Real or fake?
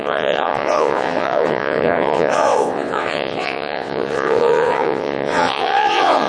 fake